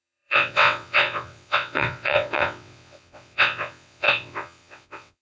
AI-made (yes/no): yes